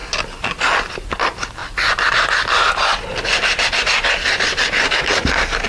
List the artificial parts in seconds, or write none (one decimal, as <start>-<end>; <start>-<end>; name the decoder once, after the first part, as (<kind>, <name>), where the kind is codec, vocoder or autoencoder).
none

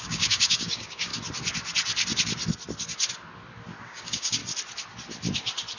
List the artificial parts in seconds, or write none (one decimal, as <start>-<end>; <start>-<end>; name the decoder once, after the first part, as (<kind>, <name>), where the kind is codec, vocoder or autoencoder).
0.0-1.1 (codec, DAC); 3.8-4.4

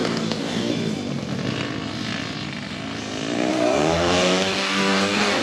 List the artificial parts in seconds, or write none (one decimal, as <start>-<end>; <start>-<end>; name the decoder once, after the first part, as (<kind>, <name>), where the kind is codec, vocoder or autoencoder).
0.0-0.7 (codec, DAC); 3.5-5.4

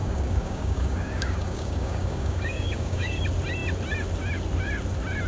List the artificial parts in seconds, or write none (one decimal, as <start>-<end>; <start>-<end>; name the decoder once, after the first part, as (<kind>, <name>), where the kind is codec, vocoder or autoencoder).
0.0-3.2 (codec, DAC)